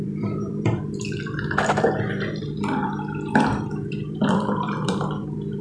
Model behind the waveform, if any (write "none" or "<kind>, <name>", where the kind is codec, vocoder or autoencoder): vocoder, BigVGAN v2